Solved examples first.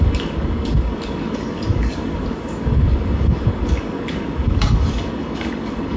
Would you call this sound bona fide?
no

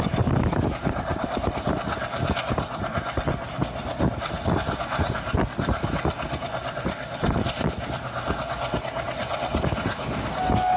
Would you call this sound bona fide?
yes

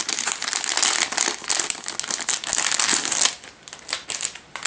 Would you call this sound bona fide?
yes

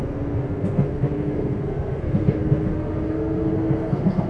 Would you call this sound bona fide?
no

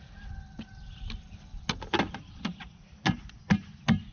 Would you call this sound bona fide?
yes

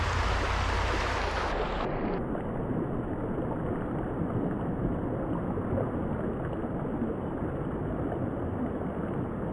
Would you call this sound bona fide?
yes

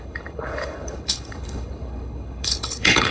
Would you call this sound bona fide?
no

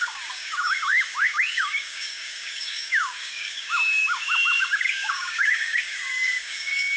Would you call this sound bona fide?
no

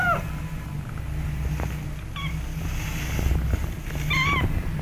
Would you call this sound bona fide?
yes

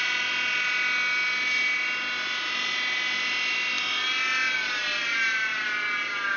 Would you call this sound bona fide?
yes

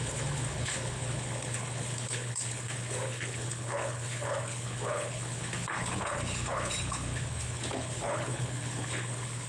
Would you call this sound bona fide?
no